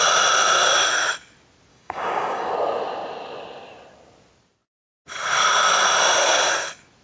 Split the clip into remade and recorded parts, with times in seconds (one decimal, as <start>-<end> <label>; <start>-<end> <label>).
0.0-1.7 recorded; 1.7-2.5 remade; 2.5-7.0 recorded